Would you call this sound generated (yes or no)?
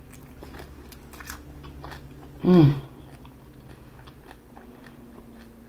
no